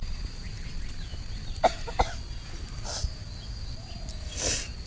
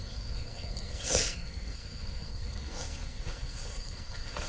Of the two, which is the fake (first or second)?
second